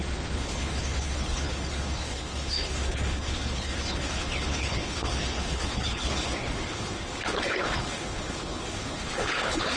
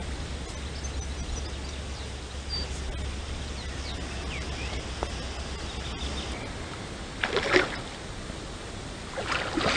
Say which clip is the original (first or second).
second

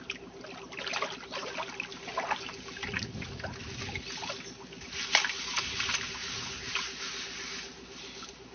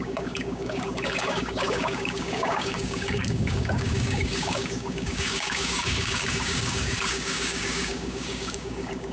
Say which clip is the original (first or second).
first